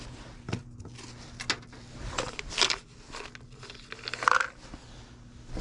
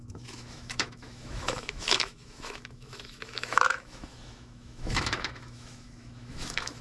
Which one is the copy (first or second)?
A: second